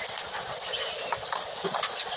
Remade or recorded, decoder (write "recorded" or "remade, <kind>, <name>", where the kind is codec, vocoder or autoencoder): remade, vocoder, BigVGAN v2